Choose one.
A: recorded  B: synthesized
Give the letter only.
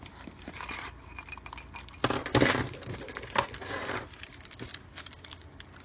A